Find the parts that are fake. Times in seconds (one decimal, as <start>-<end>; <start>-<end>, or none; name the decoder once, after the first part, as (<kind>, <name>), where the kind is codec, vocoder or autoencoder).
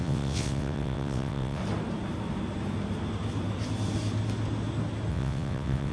0.0-1.6 (vocoder, WaveNeXt); 5.1-5.9